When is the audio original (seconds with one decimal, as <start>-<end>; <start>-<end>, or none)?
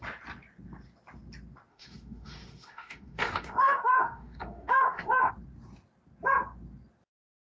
0.0-1.7; 5.3-7.5